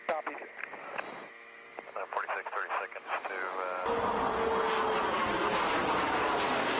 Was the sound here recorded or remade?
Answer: recorded